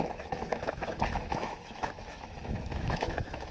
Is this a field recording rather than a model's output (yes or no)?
no